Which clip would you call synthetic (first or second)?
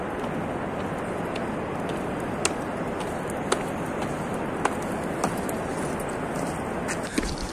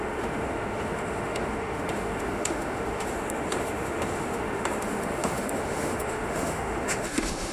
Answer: second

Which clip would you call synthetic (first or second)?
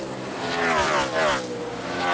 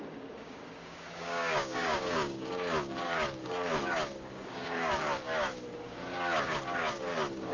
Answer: second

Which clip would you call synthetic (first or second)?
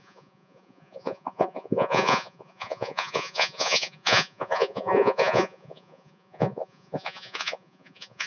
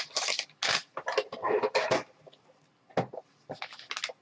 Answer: first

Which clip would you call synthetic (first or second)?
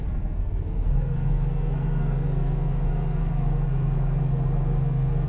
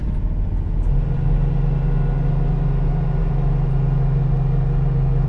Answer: first